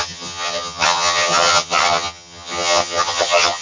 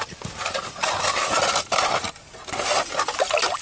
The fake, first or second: first